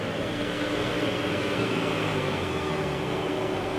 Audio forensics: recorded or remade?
remade